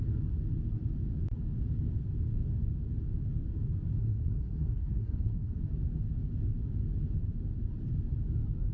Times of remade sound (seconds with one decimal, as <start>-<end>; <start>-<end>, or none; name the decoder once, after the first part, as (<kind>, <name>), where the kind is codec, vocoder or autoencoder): 4.0-5.6 (codec, SNAC)

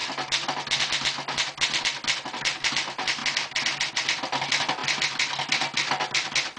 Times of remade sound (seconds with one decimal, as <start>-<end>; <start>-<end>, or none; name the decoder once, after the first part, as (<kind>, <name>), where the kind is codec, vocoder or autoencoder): none

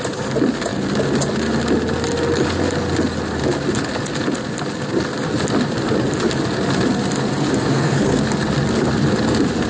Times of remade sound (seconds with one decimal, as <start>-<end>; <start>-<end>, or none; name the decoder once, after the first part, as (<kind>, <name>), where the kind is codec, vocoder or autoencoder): 7.7-8.2 (codec, SNAC)